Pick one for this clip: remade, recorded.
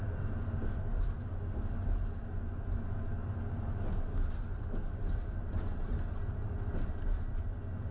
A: recorded